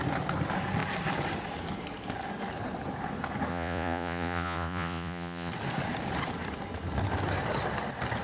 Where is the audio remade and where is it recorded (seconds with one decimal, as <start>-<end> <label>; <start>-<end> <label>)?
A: 0.0-3.5 recorded; 3.5-5.5 remade; 5.5-8.2 recorded